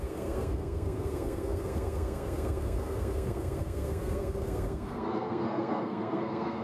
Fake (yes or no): yes